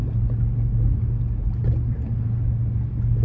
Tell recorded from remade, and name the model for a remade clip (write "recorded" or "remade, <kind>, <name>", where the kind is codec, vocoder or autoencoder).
recorded